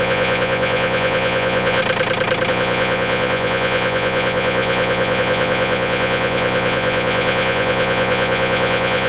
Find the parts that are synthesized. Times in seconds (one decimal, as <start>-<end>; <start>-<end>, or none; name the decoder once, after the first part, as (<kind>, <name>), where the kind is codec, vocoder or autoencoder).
0.0-1.8 (vocoder, Vocos); 2.5-9.1